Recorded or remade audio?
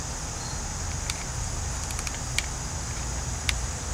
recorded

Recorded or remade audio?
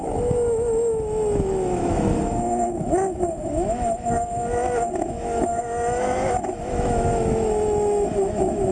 remade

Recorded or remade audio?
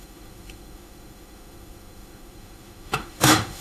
remade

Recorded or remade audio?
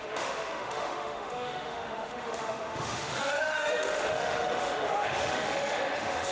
remade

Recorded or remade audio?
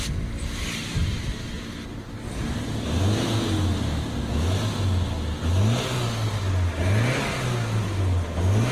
recorded